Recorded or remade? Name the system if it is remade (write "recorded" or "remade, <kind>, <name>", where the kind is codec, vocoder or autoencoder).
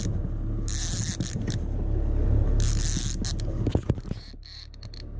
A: recorded